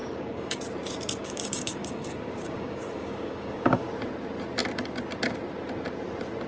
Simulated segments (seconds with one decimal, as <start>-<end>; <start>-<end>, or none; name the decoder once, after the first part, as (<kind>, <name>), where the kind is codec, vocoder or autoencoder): 0.0-0.6 (codec, DAC); 1.2-3.9